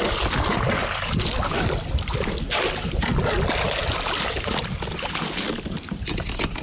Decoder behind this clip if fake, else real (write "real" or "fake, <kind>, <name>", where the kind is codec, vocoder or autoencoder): real